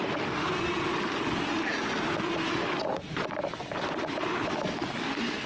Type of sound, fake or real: real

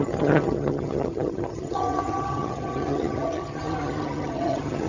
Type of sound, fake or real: fake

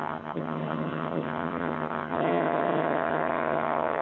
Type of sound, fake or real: fake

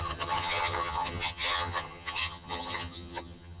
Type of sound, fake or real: fake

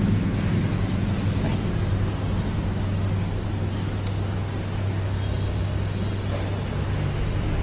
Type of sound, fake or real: real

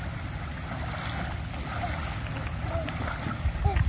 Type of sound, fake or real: real